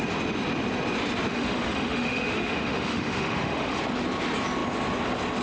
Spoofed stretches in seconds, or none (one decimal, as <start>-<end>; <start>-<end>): 1.3-3.8